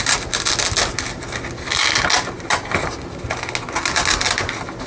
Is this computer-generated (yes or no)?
no